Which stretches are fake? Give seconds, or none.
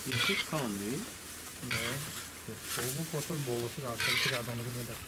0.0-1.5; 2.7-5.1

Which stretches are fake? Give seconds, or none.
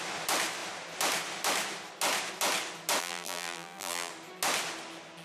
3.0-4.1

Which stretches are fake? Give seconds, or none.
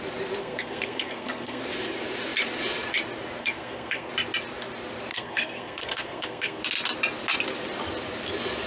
0.4-1.6; 3.4-4.1; 5.1-6.6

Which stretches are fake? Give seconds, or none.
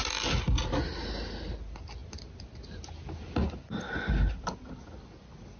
none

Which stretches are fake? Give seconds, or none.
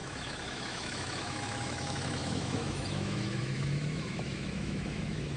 0.0-5.4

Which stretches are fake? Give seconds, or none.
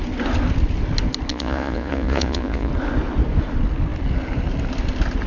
1.3-2.7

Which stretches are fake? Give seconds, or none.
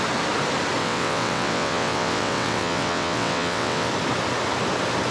0.8-3.9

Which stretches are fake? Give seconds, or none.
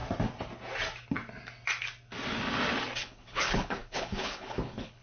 3.0-5.0